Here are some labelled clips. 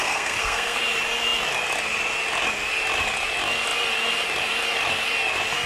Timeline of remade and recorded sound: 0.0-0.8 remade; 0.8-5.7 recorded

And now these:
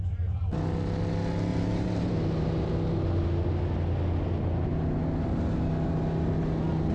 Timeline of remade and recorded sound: 0.0-1.5 recorded; 1.5-2.7 remade; 2.7-6.9 recorded

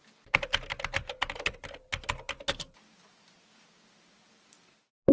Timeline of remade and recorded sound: 0.0-5.1 recorded

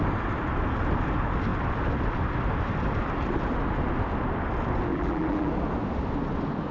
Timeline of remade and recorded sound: 0.0-4.9 recorded; 4.9-5.5 remade; 5.5-6.7 recorded